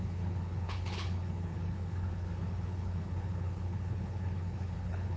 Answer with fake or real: fake